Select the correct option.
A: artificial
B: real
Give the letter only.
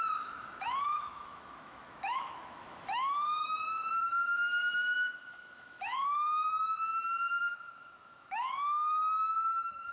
A